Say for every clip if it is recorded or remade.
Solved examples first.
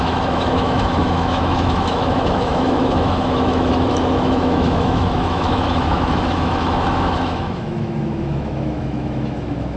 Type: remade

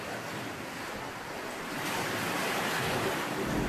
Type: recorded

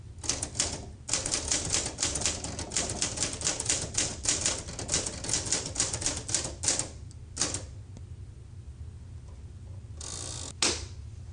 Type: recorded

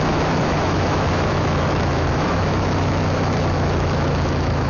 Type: remade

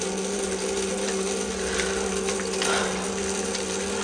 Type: recorded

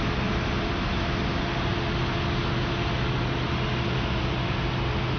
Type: recorded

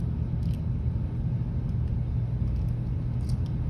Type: recorded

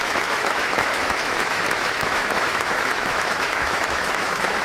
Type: remade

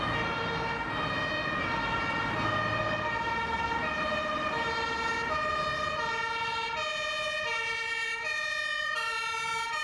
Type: recorded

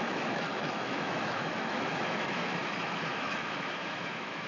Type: remade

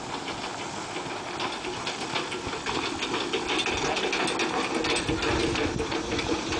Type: recorded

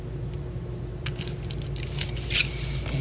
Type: recorded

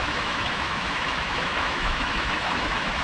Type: remade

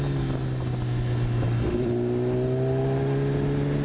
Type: recorded